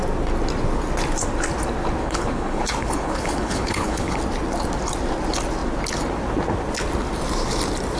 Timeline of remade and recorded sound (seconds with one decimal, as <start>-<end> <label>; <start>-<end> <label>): 0.0-2.0 recorded; 2.0-4.2 remade; 4.2-8.0 recorded